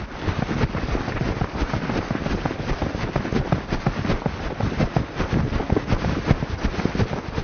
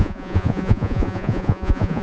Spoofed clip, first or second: second